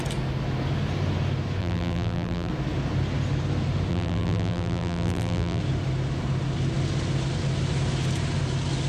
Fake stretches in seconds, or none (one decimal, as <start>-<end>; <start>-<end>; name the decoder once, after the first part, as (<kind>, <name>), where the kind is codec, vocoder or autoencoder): 1.6-2.5 (vocoder, BigVGAN v2); 3.9-5.6